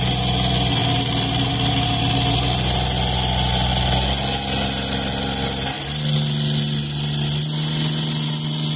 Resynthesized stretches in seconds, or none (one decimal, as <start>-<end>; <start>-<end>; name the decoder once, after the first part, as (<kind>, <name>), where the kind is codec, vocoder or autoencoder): 0.8-1.5 (vocoder, BigVGAN v2)